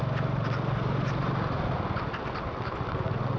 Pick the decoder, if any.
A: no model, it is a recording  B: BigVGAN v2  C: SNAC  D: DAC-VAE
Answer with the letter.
A